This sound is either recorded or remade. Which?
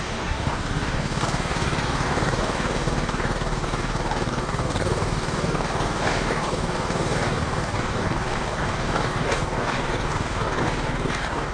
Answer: remade